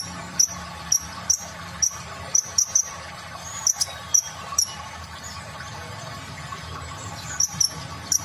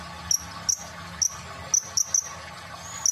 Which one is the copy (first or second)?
first